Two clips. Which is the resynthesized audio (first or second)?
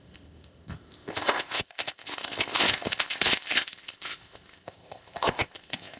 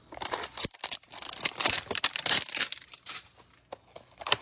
first